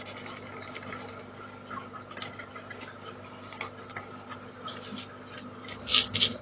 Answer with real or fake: real